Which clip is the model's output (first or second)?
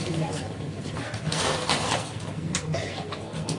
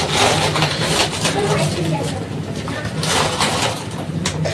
first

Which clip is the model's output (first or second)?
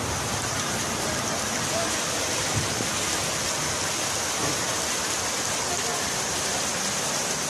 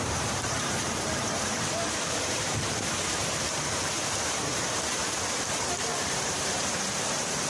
second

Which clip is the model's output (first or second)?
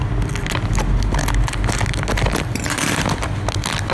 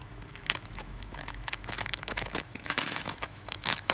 second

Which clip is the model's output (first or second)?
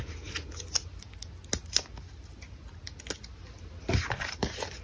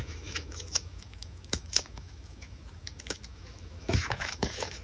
second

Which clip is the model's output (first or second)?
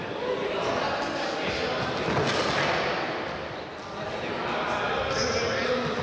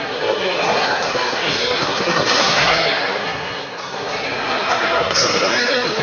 second